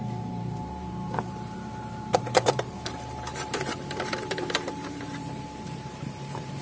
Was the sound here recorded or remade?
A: remade